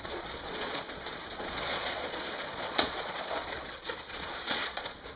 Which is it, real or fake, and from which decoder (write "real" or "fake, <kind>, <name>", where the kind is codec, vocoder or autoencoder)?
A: fake, vocoder, Vocos